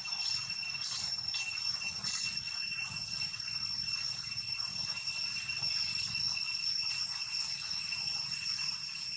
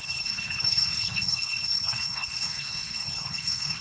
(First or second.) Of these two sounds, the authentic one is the first